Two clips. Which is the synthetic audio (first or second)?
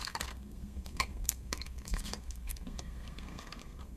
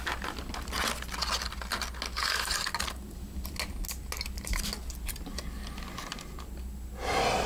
first